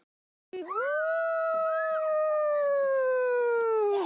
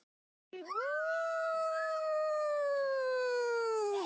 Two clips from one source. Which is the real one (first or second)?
first